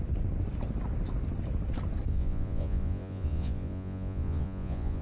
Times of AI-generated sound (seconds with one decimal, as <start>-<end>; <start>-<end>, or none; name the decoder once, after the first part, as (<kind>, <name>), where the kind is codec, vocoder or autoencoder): 2.1-5.0 (vocoder, Vocos)